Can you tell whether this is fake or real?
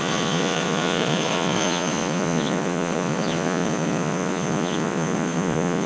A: fake